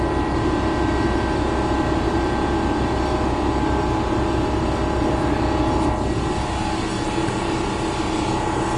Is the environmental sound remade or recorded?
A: recorded